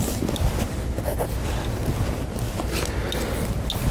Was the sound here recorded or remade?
recorded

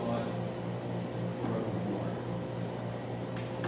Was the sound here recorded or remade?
recorded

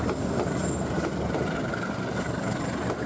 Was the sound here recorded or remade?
recorded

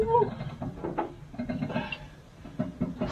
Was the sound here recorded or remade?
recorded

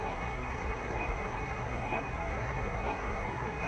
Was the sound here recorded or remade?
remade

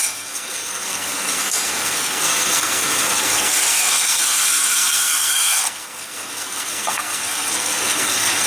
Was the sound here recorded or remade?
remade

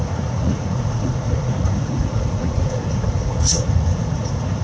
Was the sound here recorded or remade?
remade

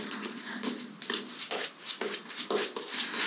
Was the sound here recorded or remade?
recorded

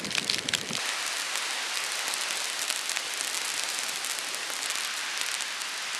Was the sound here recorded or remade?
recorded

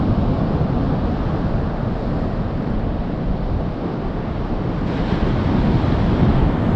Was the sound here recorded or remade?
recorded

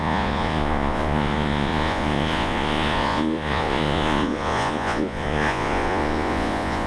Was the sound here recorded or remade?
remade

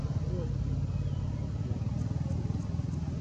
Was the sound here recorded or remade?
recorded